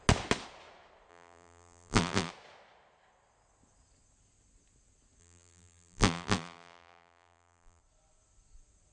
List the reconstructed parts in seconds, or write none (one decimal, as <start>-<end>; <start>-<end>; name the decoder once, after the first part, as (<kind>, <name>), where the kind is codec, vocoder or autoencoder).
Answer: 1.1-2.3 (vocoder, BigVGAN v2); 5.2-7.8